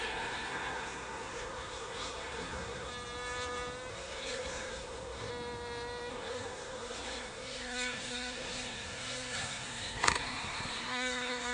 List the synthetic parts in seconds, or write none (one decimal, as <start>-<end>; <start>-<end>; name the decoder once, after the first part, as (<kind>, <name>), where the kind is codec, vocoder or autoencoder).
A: 0.0-2.9 (codec, SNAC); 3.9-5.3; 6.1-11.5